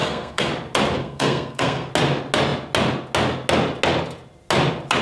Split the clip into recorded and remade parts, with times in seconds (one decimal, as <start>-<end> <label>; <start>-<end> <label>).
0.0-0.5 remade; 0.5-1.0 recorded; 1.0-1.9 remade; 1.9-5.0 recorded